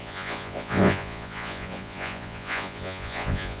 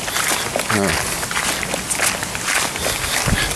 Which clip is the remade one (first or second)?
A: first